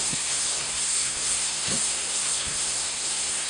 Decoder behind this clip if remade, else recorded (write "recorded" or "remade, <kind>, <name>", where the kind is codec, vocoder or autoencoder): remade, codec, SNAC